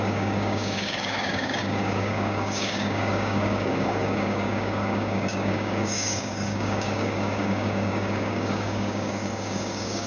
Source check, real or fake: fake